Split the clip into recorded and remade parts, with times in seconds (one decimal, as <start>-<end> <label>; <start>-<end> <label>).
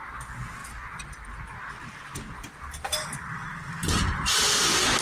0.0-5.0 recorded